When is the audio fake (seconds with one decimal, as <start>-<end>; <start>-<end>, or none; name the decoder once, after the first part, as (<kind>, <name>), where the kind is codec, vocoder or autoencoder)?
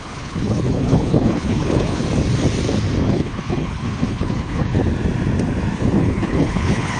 0.0-2.0 (codec, HILCodec); 3.1-4.8; 6.0-7.0